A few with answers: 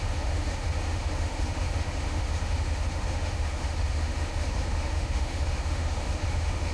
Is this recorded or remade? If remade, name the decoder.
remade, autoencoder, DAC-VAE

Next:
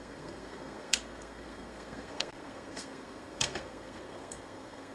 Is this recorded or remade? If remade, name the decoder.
remade, codec, SNAC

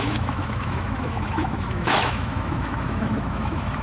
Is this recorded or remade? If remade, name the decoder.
remade, autoencoder, DAC-VAE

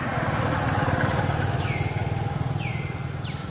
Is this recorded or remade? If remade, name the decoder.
recorded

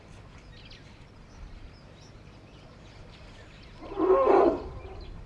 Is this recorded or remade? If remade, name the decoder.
recorded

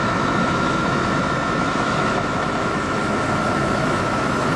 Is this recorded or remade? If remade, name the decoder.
remade, autoencoder, DAC-VAE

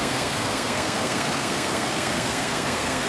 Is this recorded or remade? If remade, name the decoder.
remade, codec, SNAC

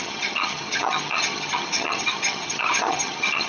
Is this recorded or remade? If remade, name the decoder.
remade, vocoder, HiFi-GAN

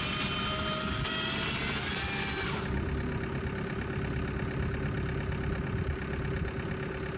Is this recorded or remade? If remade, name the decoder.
recorded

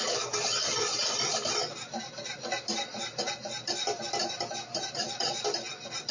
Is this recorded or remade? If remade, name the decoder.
recorded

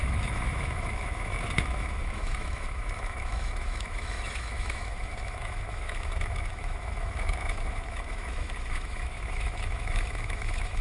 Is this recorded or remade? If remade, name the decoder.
remade, autoencoder, DAC-VAE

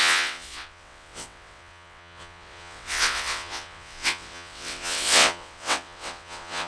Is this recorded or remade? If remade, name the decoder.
remade, vocoder, WaveNeXt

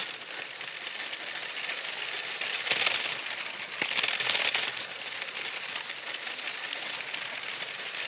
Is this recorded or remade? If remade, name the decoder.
recorded